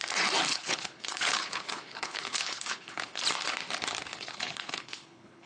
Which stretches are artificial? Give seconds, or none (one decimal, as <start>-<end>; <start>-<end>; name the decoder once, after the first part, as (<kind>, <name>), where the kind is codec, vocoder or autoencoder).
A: 0.5-3.2 (codec, HILCodec); 4.1-5.5